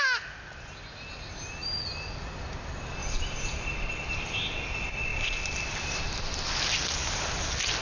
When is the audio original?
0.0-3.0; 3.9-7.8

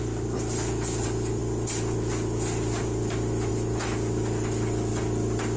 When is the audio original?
0.0-5.6